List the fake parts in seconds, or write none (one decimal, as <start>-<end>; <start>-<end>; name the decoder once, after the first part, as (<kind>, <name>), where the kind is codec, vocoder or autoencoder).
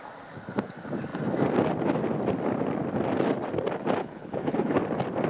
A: 4.0-4.8 (codec, HILCodec)